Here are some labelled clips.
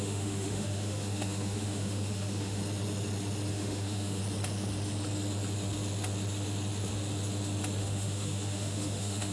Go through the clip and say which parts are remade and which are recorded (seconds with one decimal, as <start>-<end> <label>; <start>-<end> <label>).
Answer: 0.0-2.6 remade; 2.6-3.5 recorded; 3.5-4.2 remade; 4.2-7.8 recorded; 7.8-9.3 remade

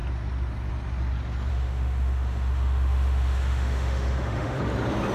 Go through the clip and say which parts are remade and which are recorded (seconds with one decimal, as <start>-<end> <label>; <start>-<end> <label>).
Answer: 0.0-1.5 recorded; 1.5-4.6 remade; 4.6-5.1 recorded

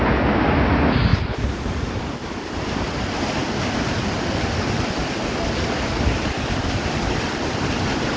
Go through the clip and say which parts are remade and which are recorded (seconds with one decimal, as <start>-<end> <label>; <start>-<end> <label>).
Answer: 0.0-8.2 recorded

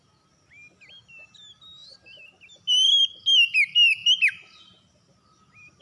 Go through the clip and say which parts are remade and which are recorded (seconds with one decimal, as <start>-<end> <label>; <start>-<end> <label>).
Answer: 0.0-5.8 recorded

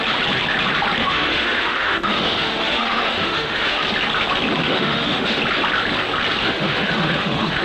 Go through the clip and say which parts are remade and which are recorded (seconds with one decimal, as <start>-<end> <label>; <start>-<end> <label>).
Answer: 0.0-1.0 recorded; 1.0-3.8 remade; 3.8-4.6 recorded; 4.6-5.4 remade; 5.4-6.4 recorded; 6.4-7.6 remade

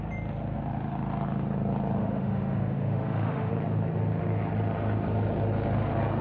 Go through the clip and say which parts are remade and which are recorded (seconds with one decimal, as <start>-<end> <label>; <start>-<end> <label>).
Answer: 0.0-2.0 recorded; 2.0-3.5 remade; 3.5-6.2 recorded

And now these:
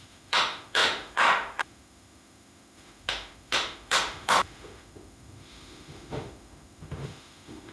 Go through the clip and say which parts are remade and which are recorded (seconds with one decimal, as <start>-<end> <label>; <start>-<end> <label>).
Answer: 0.0-7.7 remade